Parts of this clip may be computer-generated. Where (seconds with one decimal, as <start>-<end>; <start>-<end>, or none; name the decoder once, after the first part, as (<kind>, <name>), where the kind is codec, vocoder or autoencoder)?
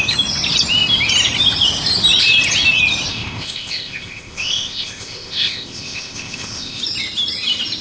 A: 3.1-6.8 (codec, ZipCodec)